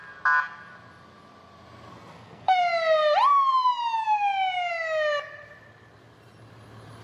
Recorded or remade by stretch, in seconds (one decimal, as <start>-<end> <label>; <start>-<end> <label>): 0.0-1.9 recorded; 1.9-2.6 remade; 2.6-7.0 recorded